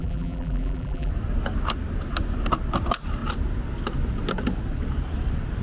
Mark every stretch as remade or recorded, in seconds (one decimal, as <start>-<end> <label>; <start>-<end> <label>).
0.0-1.1 remade; 1.1-5.6 recorded